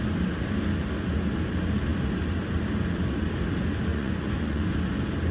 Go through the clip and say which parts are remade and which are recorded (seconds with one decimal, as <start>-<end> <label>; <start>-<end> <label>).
0.0-3.9 recorded; 3.9-4.7 remade; 4.7-5.3 recorded